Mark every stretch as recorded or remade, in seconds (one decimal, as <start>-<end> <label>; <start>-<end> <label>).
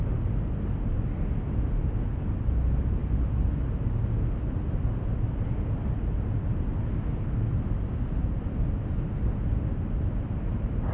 0.0-10.9 recorded